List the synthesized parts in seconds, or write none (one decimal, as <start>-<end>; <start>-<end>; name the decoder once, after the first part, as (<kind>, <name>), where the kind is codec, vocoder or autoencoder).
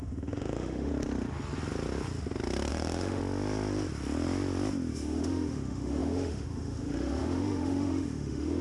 0.0-0.9 (autoencoder, DAC-VAE); 2.7-3.2; 4.9-8.6